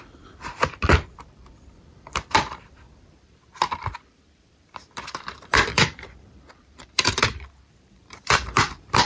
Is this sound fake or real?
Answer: fake